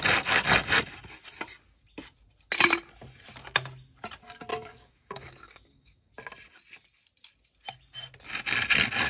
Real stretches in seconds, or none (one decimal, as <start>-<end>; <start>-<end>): 0.0-4.5; 6.1-9.1